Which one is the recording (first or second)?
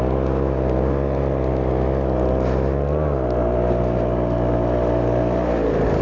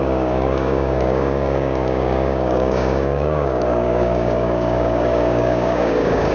first